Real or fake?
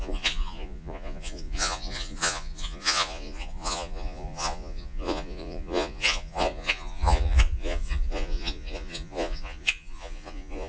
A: fake